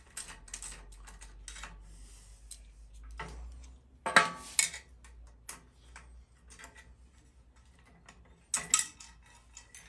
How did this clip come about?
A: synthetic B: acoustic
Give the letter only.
B